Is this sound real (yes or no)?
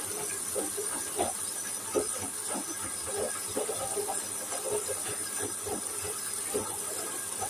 yes